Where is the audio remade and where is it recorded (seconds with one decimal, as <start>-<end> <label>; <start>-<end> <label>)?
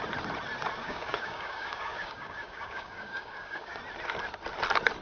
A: 0.0-0.8 recorded; 0.8-3.8 remade; 3.8-5.0 recorded